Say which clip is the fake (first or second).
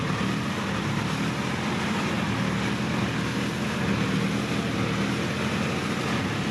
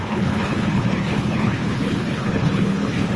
second